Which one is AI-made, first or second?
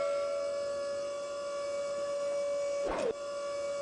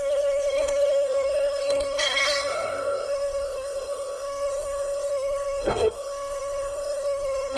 second